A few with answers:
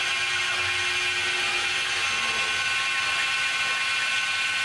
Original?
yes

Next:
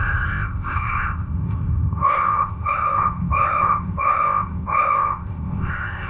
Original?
no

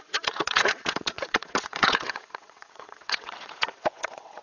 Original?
no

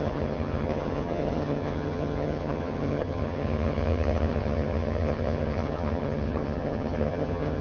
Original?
no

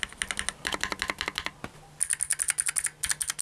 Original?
yes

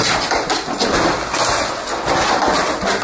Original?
yes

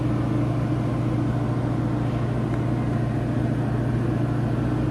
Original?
yes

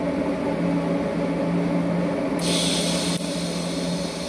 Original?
yes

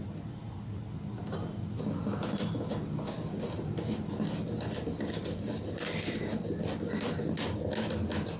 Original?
yes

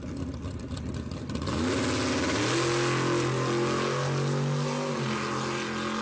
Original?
yes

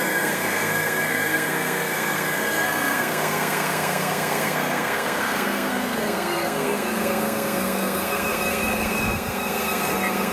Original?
no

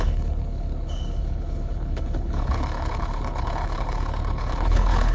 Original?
no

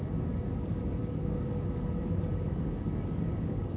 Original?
no